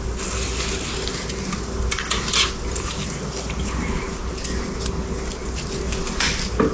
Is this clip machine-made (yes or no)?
no